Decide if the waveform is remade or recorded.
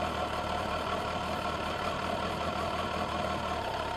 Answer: recorded